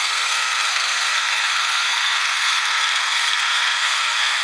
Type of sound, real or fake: fake